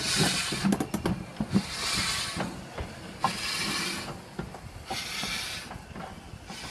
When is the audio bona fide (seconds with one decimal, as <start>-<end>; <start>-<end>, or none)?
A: 0.0-6.7